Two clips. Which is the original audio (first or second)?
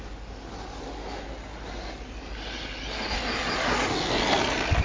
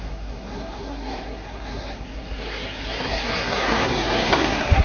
first